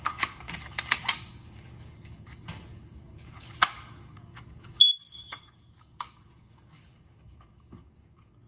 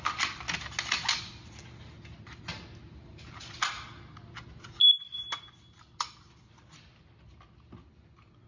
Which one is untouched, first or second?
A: second